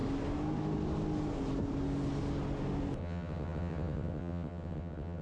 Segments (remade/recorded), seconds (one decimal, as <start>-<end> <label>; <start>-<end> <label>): 0.0-3.0 recorded; 3.0-5.2 remade